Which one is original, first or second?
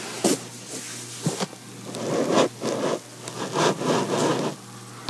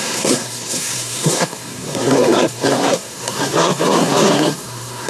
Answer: first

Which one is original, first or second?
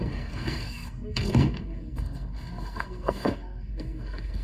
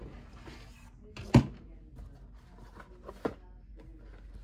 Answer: second